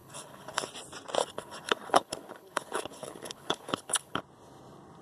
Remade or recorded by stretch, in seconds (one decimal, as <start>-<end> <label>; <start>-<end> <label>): 0.0-0.7 remade; 0.7-1.2 recorded; 1.2-4.2 remade; 4.2-5.0 recorded